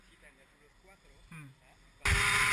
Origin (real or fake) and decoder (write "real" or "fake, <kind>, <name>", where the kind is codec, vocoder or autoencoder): real